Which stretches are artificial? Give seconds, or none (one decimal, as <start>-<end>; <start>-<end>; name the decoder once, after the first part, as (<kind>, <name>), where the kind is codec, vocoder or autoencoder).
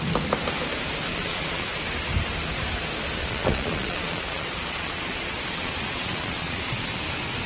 1.1-1.8 (vocoder, Vocos); 3.2-7.0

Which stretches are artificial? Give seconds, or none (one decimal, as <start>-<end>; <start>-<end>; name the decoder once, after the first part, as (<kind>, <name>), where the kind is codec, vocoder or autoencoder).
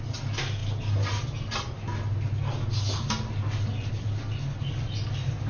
none